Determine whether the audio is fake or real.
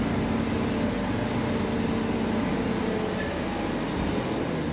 real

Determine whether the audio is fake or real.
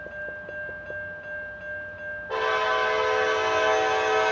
real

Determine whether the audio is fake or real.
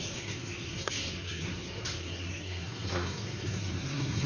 fake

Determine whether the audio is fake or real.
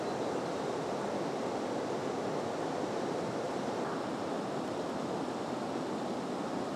real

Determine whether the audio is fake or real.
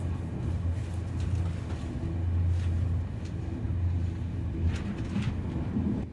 real